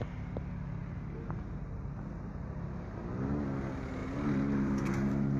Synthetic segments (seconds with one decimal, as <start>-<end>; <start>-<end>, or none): 4.0-5.4